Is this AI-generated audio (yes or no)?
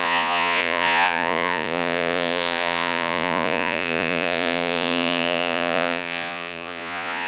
yes